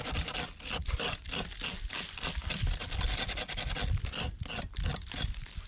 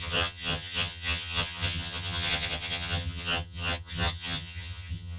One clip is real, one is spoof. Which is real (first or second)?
first